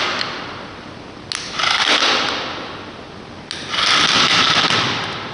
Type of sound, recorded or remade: recorded